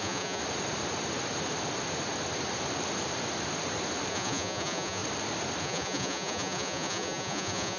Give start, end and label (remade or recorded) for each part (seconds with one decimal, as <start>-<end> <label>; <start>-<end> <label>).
0.0-0.4 remade; 0.4-4.1 recorded; 4.1-5.0 remade; 5.0-5.6 recorded; 5.6-7.8 remade